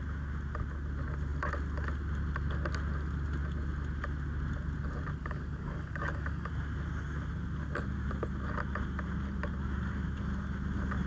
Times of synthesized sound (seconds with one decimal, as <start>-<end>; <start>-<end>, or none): 5.2-6.5